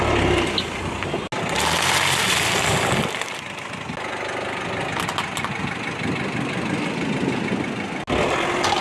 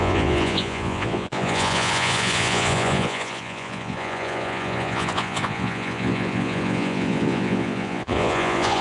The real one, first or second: first